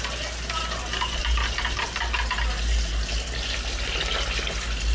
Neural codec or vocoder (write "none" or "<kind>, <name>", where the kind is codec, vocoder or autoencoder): none